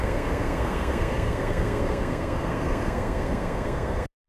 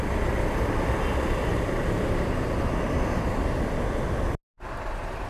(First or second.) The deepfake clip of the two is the first